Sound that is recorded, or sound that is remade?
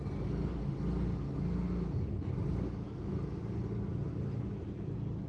recorded